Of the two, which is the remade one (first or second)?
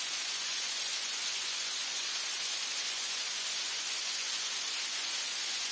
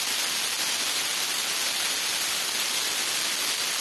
first